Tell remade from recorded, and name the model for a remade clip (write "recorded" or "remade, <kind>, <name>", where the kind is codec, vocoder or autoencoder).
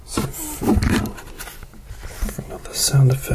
recorded